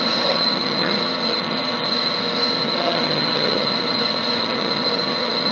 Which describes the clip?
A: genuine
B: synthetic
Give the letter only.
B